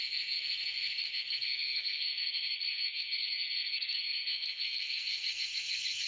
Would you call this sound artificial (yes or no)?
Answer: yes